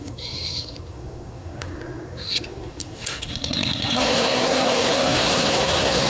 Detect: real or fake fake